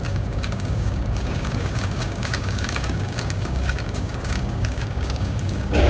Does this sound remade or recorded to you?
remade